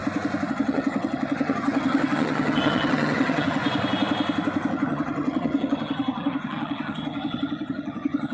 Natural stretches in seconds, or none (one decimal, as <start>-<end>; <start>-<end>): 0.0-0.5; 3.6-4.7